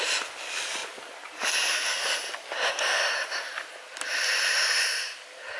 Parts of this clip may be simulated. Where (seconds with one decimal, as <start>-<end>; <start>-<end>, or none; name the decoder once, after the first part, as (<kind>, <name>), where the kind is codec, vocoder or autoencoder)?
none